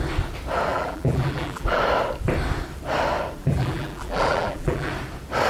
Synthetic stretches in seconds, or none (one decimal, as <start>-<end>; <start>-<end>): 0.7-1.8; 3.4-4.9